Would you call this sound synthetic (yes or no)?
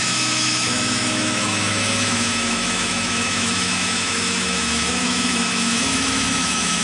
yes